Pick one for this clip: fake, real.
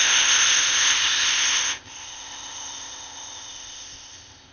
fake